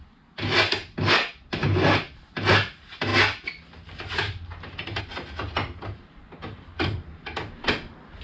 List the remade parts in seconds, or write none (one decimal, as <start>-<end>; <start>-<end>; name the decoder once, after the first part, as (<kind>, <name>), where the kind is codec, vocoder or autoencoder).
none